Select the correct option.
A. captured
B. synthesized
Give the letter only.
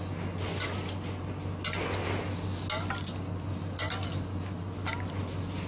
A